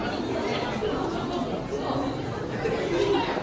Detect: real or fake real